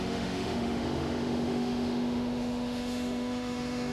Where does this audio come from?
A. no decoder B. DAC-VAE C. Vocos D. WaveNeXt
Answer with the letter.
B